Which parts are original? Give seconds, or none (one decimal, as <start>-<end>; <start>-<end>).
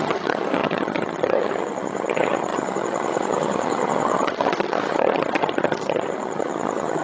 none